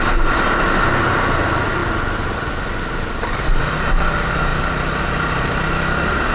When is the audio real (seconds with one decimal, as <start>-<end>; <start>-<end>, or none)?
0.0-6.3